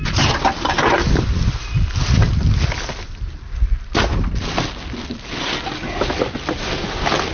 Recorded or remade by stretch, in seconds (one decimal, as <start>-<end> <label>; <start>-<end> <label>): 0.0-7.3 recorded